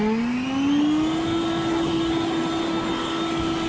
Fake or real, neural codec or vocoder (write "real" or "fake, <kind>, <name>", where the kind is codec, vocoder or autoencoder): real